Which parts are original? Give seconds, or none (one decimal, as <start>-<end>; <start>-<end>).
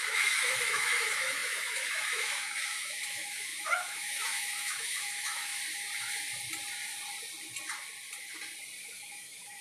5.5-8.8